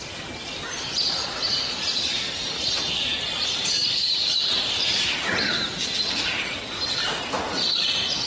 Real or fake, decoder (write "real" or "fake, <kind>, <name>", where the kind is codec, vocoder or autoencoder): real